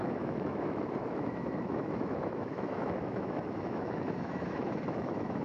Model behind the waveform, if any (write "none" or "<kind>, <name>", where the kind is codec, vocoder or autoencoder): autoencoder, DAC-VAE